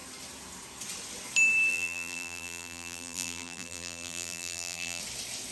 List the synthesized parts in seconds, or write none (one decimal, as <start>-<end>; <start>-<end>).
1.7-5.0